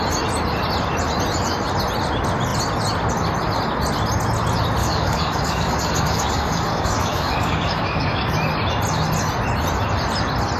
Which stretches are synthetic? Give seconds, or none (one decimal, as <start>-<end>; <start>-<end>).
4.8-8.3